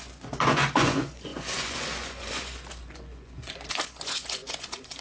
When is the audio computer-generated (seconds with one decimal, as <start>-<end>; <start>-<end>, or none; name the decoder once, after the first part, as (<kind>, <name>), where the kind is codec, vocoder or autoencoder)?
0.0-5.0 (vocoder, Vocos)